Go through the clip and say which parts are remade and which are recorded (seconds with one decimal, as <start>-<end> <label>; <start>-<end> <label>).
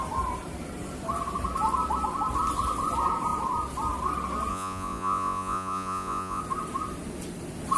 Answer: 0.0-4.5 recorded; 4.5-6.4 remade; 6.4-7.8 recorded